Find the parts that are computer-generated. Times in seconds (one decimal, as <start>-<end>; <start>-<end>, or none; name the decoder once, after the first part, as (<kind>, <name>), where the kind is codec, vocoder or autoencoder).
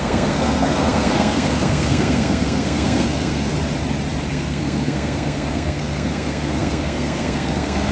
0.0-3.5 (codec, SNAC); 4.3-7.9